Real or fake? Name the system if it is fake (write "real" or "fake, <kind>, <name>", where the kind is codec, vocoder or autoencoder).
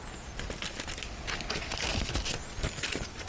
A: real